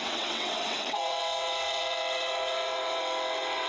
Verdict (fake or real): fake